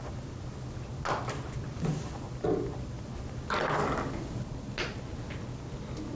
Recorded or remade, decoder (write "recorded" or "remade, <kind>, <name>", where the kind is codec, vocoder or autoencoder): recorded